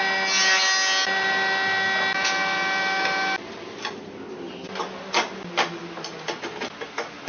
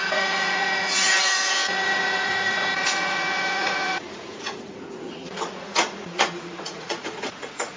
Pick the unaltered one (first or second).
first